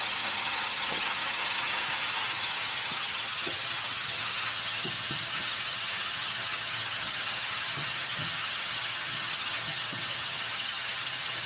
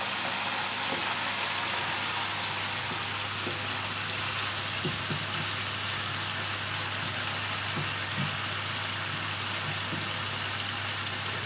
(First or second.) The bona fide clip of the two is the second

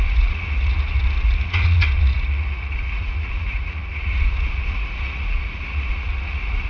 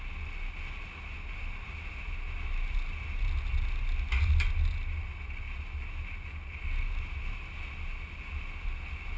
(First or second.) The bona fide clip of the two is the second